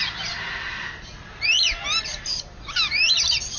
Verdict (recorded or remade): remade